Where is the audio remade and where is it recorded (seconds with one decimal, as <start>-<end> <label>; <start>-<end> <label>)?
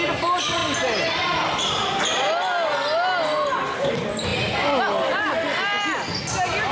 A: 0.0-6.7 recorded